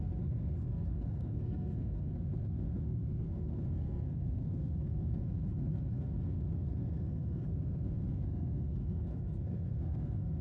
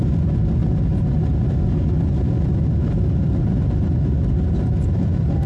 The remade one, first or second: first